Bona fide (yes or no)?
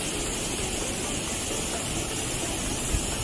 yes